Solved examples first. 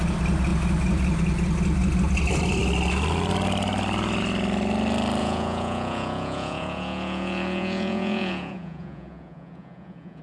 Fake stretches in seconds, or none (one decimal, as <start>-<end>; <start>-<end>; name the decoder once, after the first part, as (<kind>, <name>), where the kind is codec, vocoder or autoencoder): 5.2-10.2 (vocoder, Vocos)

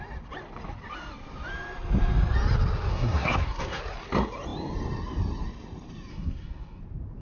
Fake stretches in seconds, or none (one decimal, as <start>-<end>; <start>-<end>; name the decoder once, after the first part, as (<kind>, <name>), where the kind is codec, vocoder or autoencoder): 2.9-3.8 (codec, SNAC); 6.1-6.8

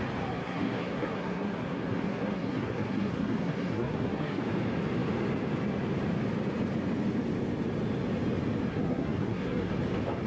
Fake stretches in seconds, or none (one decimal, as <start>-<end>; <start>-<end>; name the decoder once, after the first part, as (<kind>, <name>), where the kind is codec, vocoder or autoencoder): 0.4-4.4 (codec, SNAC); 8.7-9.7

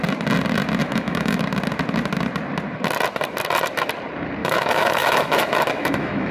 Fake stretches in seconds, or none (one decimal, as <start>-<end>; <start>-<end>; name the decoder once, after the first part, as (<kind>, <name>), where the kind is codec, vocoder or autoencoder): 0.8-1.4 (autoencoder, DAC-VAE); 4.4-6.3

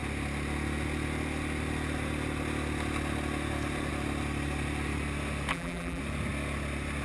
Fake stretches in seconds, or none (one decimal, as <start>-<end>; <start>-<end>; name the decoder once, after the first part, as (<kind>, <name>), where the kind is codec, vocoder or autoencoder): 5.5-6.0 (vocoder, BigVGAN v2)